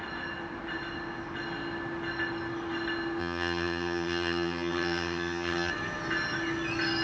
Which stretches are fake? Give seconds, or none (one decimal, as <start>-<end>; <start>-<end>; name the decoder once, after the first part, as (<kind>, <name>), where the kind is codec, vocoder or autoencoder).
3.2-5.7 (vocoder, HiFi-GAN)